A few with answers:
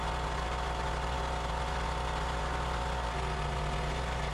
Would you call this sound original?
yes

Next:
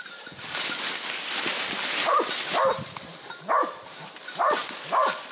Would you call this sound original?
yes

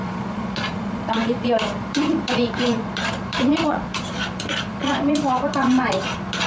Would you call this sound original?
no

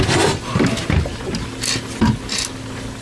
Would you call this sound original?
yes